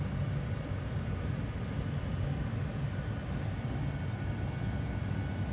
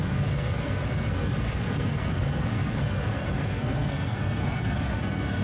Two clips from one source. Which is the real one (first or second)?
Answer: first